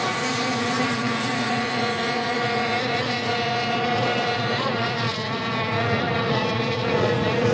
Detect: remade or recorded remade